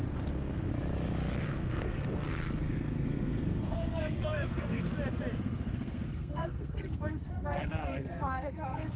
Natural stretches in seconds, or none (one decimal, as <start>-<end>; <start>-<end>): 0.7-1.4; 4.9-5.4